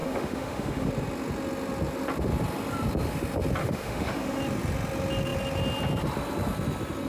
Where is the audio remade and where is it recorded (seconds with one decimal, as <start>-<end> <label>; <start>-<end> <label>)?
0.0-0.9 remade; 0.9-3.6 recorded; 3.6-4.4 remade; 4.4-7.1 recorded